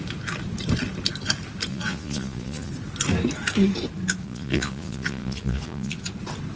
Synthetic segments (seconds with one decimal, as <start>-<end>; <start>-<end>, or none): 1.7-2.7; 4.2-6.0